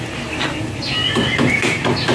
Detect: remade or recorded recorded